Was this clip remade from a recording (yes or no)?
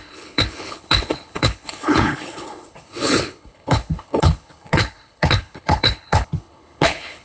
yes